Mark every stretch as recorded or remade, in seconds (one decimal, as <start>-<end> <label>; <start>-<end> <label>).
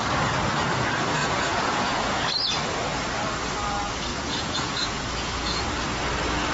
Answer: 0.0-1.2 recorded; 1.2-2.2 remade; 2.2-4.1 recorded; 4.1-5.6 remade; 5.6-6.5 recorded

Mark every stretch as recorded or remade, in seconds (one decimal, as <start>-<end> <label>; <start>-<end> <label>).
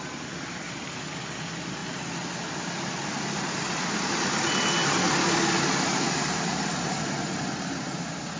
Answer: 0.0-8.4 recorded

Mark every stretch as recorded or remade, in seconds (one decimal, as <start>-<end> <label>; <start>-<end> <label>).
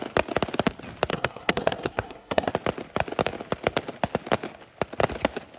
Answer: 0.0-1.1 recorded; 1.1-2.5 remade; 2.5-5.6 recorded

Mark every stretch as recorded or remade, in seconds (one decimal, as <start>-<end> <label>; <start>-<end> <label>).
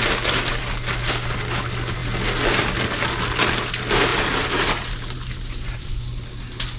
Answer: 0.0-4.1 recorded; 4.1-6.0 remade; 6.0-6.8 recorded